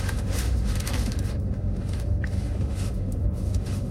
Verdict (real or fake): fake